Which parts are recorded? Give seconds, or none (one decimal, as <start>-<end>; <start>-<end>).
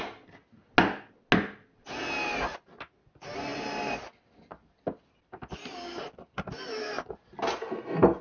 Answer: 0.0-3.5; 6.5-8.2